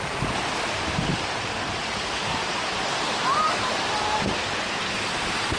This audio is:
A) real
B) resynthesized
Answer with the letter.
B